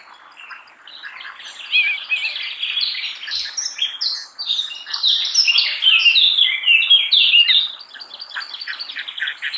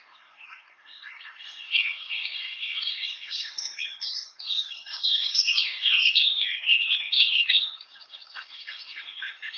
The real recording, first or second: first